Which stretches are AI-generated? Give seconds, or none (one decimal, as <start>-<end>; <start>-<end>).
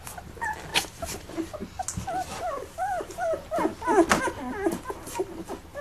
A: none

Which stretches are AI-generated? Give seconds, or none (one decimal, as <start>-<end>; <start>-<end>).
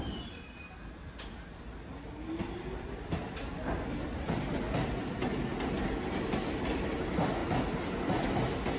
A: none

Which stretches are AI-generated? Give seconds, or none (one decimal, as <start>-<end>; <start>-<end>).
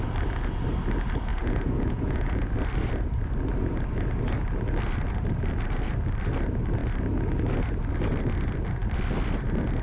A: 1.3-2.5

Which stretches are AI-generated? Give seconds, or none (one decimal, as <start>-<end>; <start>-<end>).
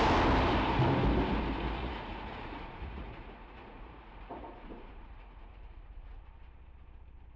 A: 1.8-6.2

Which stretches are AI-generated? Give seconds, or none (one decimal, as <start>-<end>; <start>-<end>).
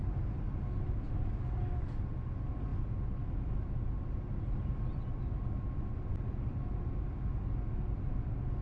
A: none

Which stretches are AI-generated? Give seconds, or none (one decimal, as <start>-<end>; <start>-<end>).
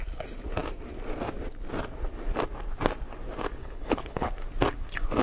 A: 3.6-4.3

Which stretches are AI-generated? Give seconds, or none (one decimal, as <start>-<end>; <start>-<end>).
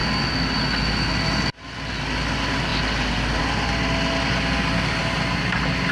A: none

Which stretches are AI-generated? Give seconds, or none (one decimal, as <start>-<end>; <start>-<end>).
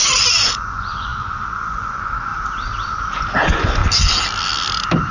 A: 0.5-2.3; 2.9-3.8